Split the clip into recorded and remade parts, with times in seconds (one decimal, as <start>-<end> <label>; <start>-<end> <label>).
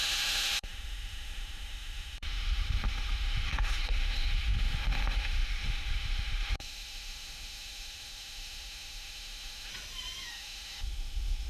0.0-9.7 remade; 9.7-10.3 recorded; 10.3-11.5 remade